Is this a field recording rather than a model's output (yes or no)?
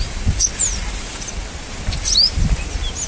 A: yes